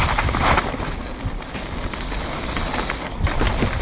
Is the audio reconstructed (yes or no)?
no